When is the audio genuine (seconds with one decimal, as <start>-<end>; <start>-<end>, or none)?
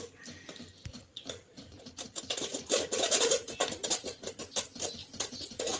0.0-0.9; 4.4-5.0